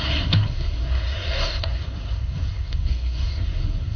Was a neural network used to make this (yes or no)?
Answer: yes